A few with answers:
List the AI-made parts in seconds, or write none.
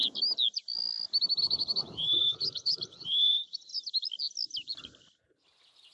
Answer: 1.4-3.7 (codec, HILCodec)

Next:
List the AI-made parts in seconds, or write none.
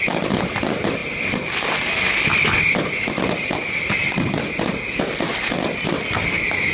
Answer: none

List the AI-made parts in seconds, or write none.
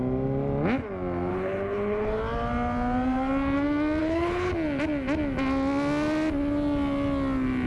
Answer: 1.3-2.2 (codec, HILCodec); 4.0-4.5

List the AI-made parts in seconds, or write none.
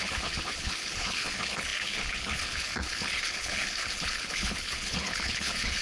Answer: 0.0-5.8 (codec, HILCodec)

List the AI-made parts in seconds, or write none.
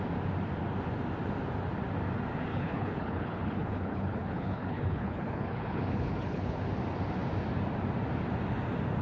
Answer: 2.5-6.6 (codec, HILCodec)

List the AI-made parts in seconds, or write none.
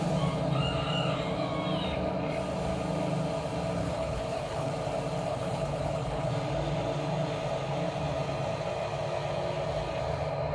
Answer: 3.8-4.7 (codec, HILCodec); 5.3-6.3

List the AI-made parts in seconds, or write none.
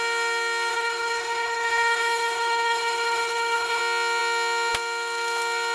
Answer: 0.7-3.8 (codec, HILCodec)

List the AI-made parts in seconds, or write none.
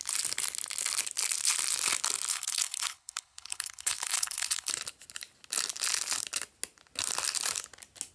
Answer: 2.3-4.7 (codec, HILCodec)